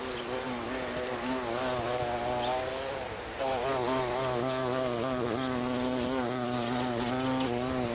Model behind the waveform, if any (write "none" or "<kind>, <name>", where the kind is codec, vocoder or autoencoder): none